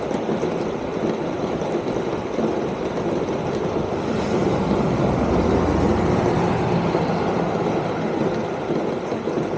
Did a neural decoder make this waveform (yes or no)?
no